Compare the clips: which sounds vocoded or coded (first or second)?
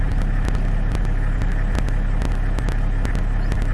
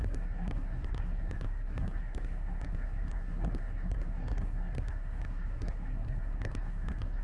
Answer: second